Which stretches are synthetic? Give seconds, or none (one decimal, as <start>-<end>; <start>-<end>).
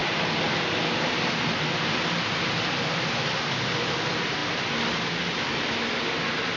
none